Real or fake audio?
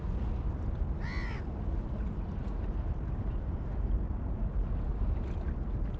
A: real